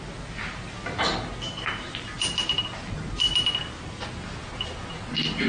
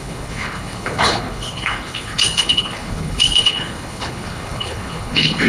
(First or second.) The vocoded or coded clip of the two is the second